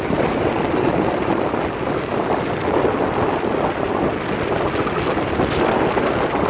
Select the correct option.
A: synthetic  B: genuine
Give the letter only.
B